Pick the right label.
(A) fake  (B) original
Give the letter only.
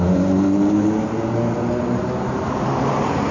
B